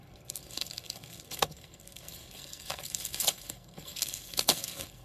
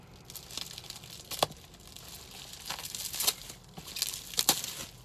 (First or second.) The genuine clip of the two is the second